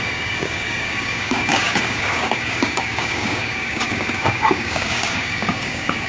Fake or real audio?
fake